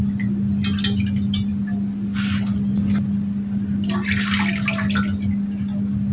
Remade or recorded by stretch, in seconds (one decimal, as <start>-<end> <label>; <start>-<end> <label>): 0.0-6.1 recorded